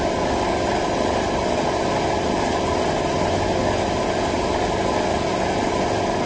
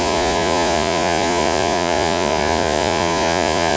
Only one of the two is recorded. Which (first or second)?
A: first